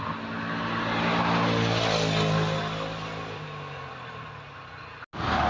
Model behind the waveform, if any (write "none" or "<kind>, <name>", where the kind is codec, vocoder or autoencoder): none